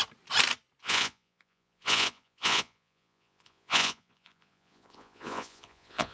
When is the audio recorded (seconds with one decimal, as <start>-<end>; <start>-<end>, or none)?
0.0-0.8